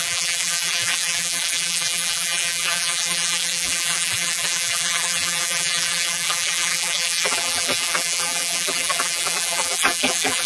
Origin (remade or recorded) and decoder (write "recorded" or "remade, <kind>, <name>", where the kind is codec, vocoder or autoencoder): remade, vocoder, BigVGAN v2